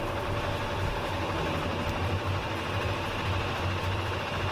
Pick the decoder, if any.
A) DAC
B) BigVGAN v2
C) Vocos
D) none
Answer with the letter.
B